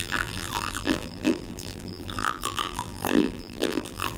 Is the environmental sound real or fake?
fake